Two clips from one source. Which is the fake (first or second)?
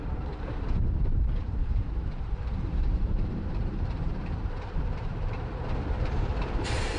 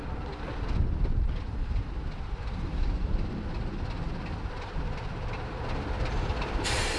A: first